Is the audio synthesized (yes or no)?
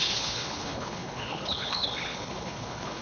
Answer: yes